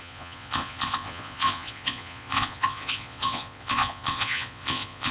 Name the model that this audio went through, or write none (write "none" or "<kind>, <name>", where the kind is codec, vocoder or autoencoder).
vocoder, Vocos